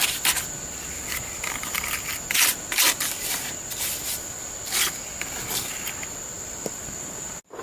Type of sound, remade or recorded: recorded